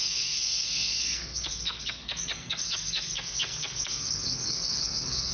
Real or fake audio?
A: fake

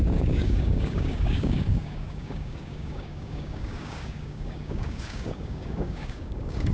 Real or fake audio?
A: fake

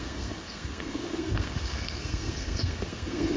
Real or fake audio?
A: fake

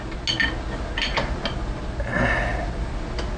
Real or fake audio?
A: real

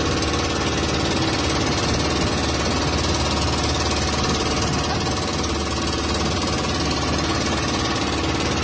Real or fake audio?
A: real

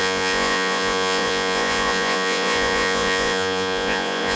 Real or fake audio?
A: fake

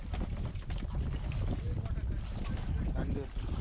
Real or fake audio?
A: real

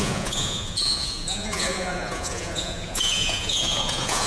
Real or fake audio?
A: fake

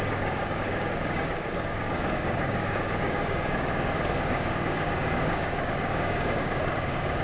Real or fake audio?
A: fake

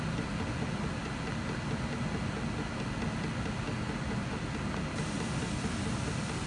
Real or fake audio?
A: real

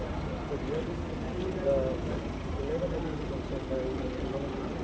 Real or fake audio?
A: real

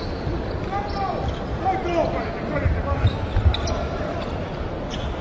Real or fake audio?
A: real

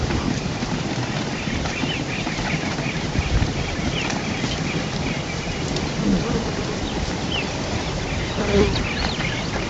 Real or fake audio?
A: real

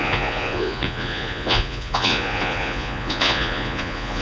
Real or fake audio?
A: fake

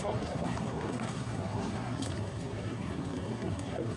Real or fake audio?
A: fake